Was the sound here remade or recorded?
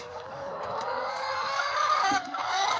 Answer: remade